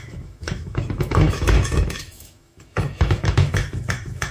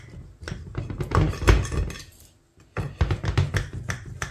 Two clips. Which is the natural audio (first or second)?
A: second